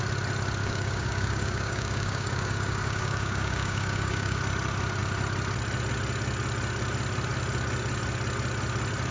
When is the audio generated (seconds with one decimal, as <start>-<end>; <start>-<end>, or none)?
0.6-4.4